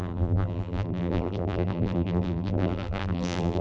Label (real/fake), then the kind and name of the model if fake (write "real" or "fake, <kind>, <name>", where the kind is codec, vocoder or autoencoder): fake, vocoder, BigVGAN v2